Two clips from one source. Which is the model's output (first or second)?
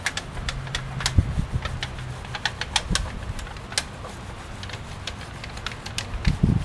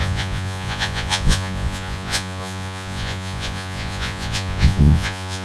second